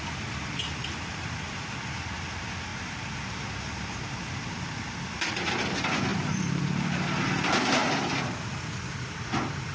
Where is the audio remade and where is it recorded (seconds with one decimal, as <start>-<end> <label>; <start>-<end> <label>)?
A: 0.0-2.7 recorded; 2.7-4.3 remade; 4.3-6.1 recorded; 6.1-6.6 remade; 6.6-9.7 recorded